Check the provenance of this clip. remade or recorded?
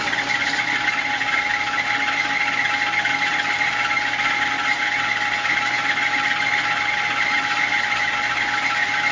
recorded